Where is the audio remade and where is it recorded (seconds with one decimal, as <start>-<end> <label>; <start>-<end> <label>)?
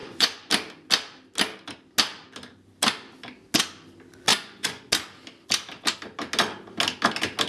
0.0-0.5 remade; 0.5-4.3 recorded; 4.3-4.9 remade; 4.9-7.5 recorded